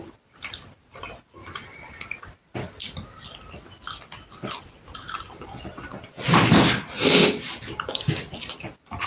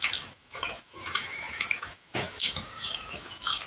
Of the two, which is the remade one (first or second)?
second